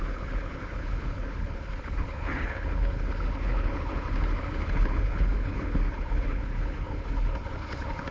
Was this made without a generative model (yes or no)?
no